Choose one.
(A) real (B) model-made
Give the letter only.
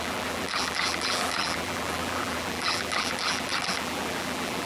B